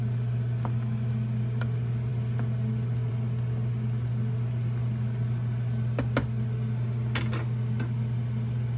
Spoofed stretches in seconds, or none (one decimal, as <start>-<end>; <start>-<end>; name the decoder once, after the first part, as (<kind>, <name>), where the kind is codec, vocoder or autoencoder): none